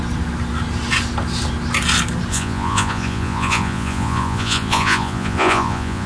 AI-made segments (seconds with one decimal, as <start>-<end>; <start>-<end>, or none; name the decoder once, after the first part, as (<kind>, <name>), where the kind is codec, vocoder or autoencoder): 2.3-6.1 (vocoder, Vocos)